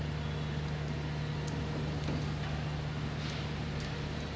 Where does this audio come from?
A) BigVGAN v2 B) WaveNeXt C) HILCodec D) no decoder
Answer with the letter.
D